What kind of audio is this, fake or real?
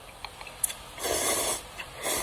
fake